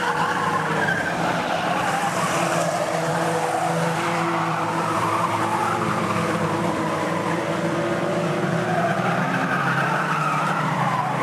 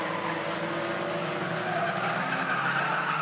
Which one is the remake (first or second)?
first